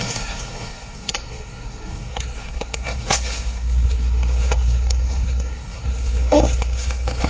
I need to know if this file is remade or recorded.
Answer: remade